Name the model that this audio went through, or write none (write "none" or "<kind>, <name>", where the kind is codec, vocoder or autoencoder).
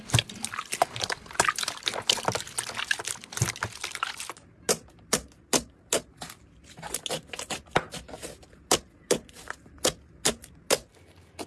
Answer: none